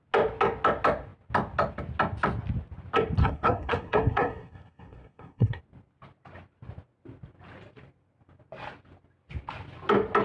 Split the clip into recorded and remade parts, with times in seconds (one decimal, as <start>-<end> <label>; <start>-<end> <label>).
0.0-3.2 recorded; 3.2-5.6 remade; 5.6-10.2 recorded